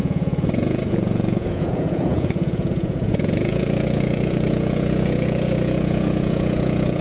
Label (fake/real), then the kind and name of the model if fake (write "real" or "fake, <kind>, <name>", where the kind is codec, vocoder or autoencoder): fake, vocoder, Vocos